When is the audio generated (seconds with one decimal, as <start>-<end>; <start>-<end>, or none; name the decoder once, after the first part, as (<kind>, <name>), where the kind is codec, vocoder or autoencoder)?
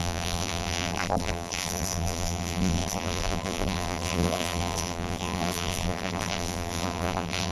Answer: 0.0-7.5 (vocoder, BigVGAN v2)